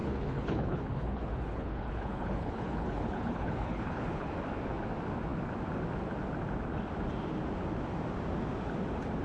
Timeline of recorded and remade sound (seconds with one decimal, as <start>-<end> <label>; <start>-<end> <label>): 0.0-4.3 remade; 4.3-9.2 recorded